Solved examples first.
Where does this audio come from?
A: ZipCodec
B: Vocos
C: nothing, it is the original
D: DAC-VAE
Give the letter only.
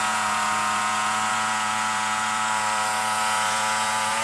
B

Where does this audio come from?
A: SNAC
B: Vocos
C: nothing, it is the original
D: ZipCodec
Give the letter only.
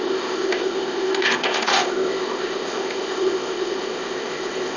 D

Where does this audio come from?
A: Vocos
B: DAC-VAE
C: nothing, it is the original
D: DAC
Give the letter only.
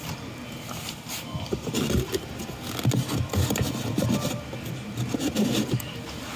C